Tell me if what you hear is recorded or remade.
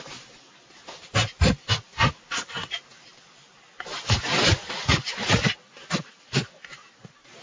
recorded